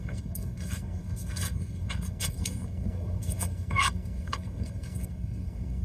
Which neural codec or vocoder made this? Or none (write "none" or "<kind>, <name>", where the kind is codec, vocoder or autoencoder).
codec, SNAC